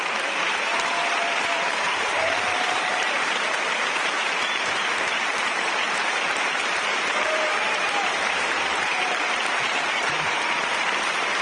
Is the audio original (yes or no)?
no